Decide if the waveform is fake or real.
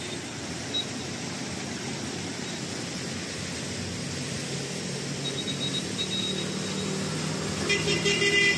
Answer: real